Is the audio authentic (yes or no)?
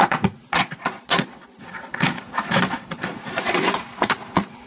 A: no